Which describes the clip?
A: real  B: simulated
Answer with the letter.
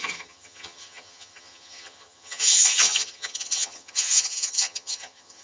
B